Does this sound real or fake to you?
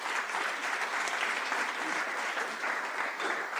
real